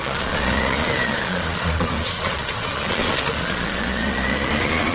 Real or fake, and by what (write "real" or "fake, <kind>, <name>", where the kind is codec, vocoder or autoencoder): fake, vocoder, Vocos